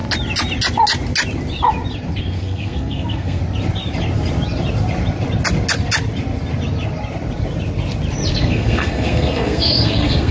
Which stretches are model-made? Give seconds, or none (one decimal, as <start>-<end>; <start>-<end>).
2.2-3.4; 8.3-10.3